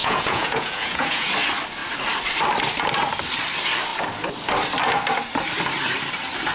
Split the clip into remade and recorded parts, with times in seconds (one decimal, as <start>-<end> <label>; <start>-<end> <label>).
0.0-1.3 remade; 1.3-6.5 recorded